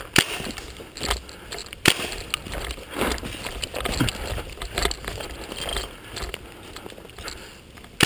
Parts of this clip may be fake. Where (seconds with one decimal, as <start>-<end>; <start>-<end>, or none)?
none